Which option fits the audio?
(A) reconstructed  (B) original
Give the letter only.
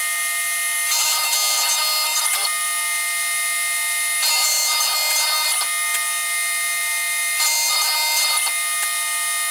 B